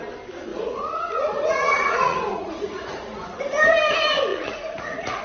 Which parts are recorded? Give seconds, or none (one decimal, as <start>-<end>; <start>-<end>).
0.0-0.5; 3.4-4.3